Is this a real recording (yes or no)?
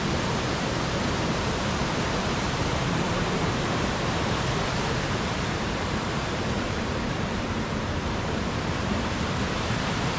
no